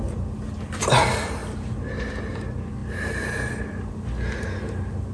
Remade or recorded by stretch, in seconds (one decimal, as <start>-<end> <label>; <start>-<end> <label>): 0.0-5.1 recorded